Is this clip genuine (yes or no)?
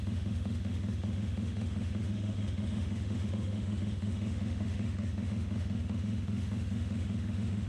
no